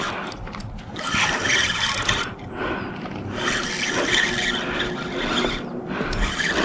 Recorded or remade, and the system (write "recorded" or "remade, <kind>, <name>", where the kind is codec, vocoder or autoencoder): recorded